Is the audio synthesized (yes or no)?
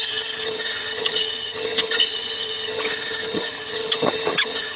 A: yes